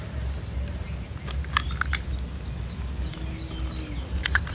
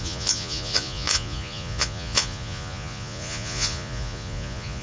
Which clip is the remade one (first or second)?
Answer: second